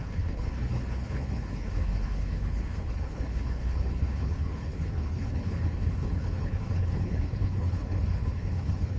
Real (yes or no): no